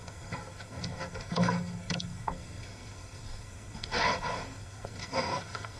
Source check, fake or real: fake